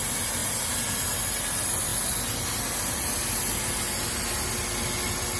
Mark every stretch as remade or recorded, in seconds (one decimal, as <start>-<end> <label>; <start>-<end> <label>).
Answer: 0.0-0.4 recorded; 0.4-1.4 remade; 1.4-5.4 recorded